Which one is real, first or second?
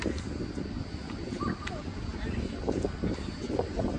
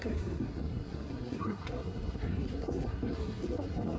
first